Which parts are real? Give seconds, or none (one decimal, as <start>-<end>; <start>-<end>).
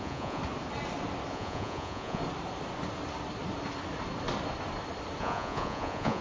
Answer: 0.4-1.3; 2.2-5.2